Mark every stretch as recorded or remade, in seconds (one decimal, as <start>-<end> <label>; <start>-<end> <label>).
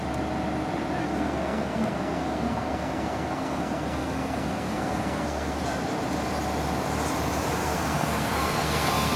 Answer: 0.0-1.0 recorded; 1.0-5.6 remade; 5.6-7.6 recorded; 7.6-9.2 remade